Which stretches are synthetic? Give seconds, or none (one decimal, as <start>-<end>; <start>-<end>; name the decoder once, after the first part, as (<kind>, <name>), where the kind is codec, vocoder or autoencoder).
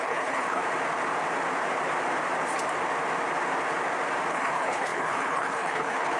0.0-0.6 (codec, HILCodec); 4.3-6.2